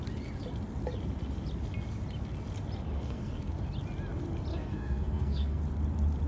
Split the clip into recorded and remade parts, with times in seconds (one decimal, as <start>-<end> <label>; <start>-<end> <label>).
0.0-2.9 recorded; 2.9-3.5 remade; 3.5-4.5 recorded; 4.5-5.6 remade; 5.6-6.3 recorded